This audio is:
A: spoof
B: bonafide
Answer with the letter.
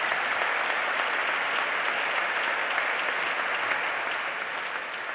B